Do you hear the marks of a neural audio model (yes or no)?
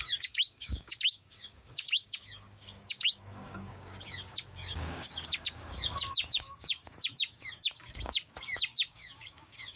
yes